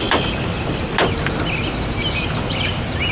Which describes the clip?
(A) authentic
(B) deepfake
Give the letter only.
A